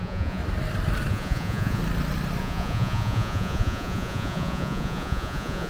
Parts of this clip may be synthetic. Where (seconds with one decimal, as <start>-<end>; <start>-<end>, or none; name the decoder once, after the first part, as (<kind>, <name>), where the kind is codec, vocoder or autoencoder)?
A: 0.0-0.4 (vocoder, Vocos); 1.1-1.8; 2.4-5.7

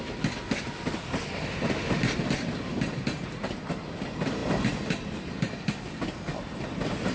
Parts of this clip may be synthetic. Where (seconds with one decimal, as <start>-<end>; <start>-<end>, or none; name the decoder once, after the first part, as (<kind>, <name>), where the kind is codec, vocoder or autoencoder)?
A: none

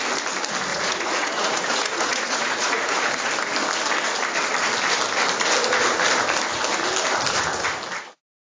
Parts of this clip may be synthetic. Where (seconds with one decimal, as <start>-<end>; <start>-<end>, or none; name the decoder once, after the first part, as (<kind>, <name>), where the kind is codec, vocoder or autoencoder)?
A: 0.7-3.1 (vocoder, Vocos)

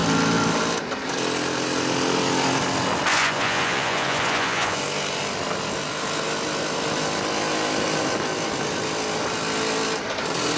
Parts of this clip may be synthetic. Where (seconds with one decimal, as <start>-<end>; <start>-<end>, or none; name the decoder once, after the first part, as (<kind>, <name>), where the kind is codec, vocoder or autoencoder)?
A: 3.1-4.8 (vocoder, Vocos)